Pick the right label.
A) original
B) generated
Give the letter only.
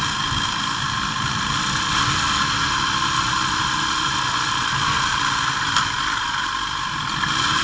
A